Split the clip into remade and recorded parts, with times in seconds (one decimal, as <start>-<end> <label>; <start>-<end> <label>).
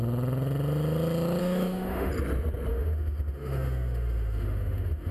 0.0-1.4 recorded; 1.4-2.1 remade; 2.1-2.7 recorded; 2.7-5.1 remade